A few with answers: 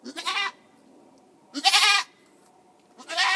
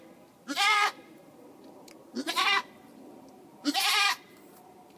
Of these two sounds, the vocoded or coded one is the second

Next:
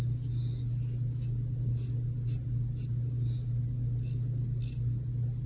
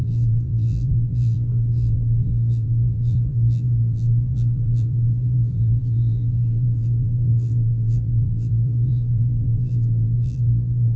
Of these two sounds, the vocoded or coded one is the second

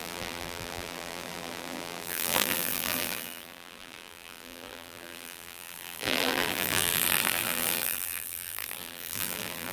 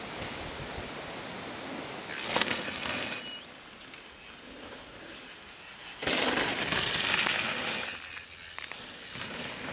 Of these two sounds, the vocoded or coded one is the first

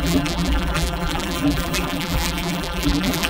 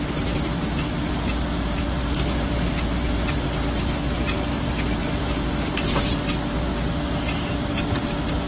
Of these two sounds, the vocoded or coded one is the first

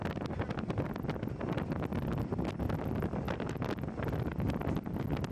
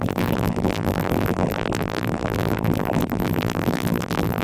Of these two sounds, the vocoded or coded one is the second